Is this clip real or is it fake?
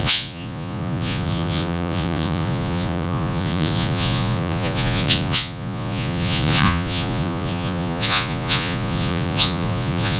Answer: fake